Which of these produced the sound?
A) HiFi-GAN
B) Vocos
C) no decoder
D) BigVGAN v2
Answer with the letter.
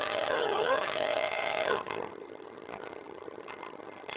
A